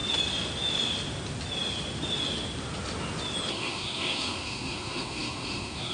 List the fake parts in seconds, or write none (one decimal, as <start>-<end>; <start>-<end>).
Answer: 3.5-5.9